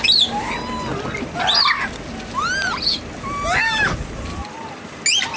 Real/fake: real